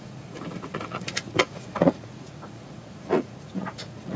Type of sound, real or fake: fake